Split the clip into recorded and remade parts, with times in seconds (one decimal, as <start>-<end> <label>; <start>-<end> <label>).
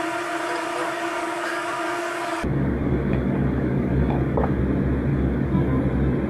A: 0.0-0.8 recorded; 0.8-4.6 remade; 4.6-5.1 recorded; 5.1-5.8 remade; 5.8-6.3 recorded